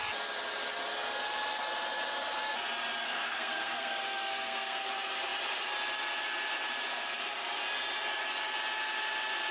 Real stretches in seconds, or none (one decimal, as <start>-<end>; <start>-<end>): 0.0-3.0; 4.8-9.5